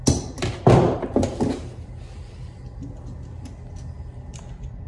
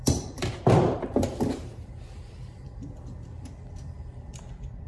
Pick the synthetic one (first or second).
second